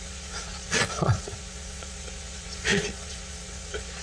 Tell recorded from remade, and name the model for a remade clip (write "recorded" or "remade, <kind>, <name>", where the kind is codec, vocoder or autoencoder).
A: remade, vocoder, Vocos